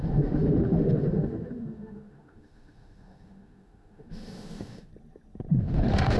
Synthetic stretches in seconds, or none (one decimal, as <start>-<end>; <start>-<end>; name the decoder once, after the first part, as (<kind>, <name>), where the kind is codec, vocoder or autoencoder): 0.0-4.9 (autoencoder, DAC-VAE); 5.6-6.2